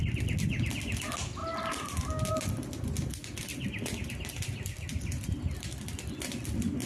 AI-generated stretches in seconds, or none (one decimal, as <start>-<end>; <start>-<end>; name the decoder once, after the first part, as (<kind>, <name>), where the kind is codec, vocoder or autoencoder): none

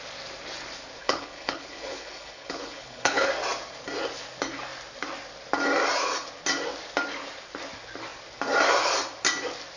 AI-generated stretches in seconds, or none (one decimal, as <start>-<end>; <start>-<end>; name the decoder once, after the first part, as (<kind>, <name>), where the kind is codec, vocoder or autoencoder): 1.0-3.3 (codec, HILCodec)